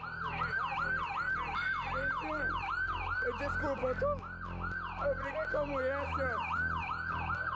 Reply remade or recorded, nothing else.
recorded